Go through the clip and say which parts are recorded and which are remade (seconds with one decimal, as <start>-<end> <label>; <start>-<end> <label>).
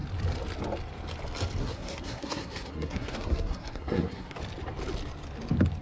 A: 0.0-1.6 recorded; 1.6-4.4 remade; 4.4-5.8 recorded